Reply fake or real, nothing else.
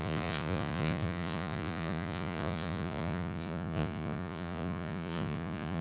fake